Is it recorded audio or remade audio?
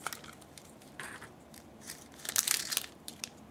remade